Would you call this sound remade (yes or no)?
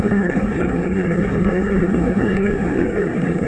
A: yes